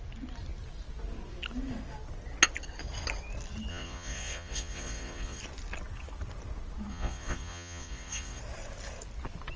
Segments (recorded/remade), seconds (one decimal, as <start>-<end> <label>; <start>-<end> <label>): 0.0-3.7 recorded; 3.7-5.4 remade; 5.4-6.9 recorded; 6.9-8.4 remade; 8.4-9.6 recorded